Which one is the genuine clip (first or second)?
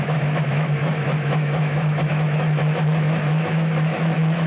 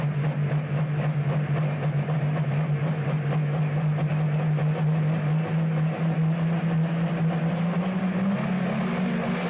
second